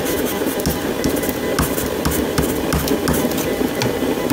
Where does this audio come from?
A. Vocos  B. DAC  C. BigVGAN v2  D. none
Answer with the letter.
D